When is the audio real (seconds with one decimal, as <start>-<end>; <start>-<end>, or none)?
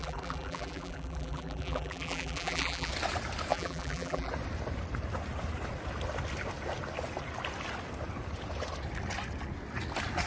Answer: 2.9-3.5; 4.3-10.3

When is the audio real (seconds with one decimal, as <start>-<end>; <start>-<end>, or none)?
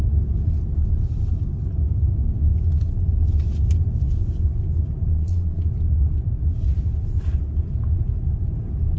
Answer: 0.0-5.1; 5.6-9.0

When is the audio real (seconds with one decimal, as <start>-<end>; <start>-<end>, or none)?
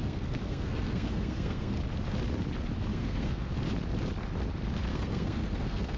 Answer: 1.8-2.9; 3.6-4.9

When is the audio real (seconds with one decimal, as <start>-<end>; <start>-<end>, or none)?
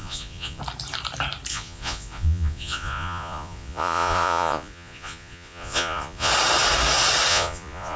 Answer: 0.6-1.5; 6.3-7.3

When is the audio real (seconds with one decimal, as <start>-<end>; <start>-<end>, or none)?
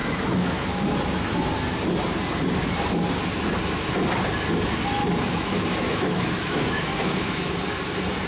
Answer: 1.5-5.0; 7.5-8.3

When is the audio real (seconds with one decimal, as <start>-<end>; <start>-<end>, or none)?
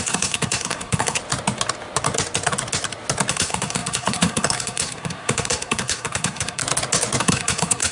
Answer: 1.2-3.3; 6.6-7.2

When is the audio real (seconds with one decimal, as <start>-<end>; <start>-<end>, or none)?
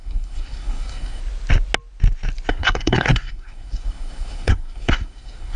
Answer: 1.2-2.5